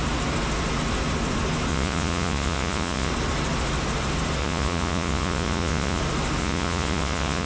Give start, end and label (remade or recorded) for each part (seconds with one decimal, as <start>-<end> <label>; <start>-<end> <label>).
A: 0.0-1.7 recorded; 1.7-3.1 remade; 3.1-4.4 recorded; 4.4-6.0 remade; 6.0-6.4 recorded; 6.4-7.5 remade